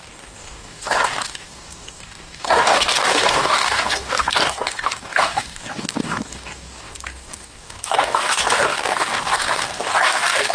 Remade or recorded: remade